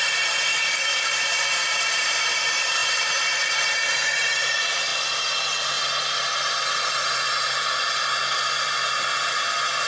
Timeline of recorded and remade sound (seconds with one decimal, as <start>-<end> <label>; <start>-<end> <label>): 0.0-0.5 recorded; 0.5-1.1 remade; 1.1-9.9 recorded